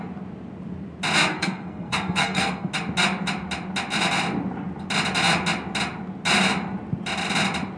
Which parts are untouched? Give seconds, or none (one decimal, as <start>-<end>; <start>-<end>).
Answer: 0.0-1.3; 2.7-7.8